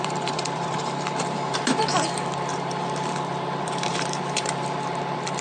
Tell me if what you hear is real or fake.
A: fake